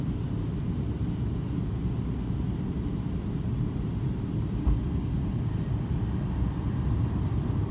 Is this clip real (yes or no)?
yes